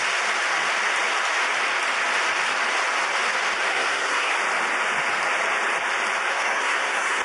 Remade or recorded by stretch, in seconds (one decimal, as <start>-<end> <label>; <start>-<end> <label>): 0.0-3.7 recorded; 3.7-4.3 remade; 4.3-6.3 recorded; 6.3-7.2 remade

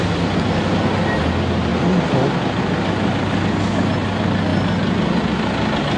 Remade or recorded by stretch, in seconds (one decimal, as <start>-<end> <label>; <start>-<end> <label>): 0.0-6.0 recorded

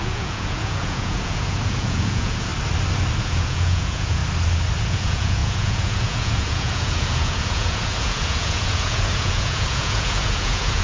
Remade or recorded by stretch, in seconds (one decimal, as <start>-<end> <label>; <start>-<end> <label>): 0.0-2.5 remade; 2.5-3.2 recorded; 3.2-4.2 remade; 4.2-4.8 recorded; 4.8-10.8 remade

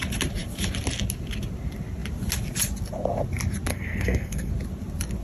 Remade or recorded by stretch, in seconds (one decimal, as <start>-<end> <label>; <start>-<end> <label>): 0.0-3.7 recorded; 3.7-4.5 remade; 4.5-5.2 recorded

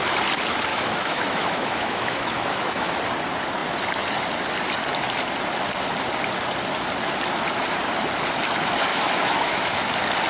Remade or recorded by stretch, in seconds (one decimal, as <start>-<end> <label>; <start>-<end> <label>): 0.0-0.7 recorded; 0.7-2.9 remade; 2.9-8.9 recorded; 8.9-9.8 remade; 9.8-10.3 recorded

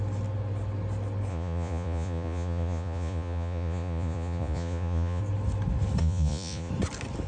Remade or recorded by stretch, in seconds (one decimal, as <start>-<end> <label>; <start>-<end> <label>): 0.0-1.3 recorded; 1.3-5.2 remade; 5.2-6.0 recorded; 6.0-6.7 remade; 6.7-7.3 recorded